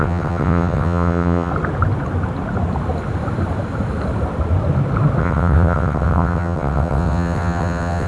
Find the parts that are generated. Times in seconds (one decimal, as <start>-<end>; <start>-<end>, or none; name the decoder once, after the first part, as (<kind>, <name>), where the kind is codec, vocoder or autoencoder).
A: 0.0-1.5 (vocoder, WaveNeXt); 5.2-8.1